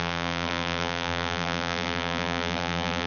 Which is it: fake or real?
fake